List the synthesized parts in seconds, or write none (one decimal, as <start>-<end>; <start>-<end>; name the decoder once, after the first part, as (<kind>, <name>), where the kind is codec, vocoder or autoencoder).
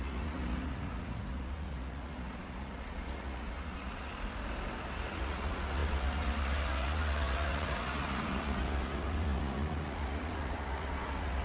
0.0-4.1 (vocoder, Vocos); 5.1-11.4